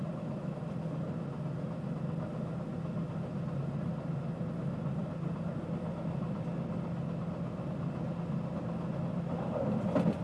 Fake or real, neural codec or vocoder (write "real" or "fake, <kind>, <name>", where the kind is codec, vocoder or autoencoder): real